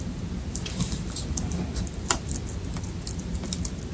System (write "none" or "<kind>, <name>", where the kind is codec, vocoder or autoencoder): none